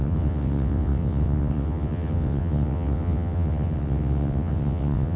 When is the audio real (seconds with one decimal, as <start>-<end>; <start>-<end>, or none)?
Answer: none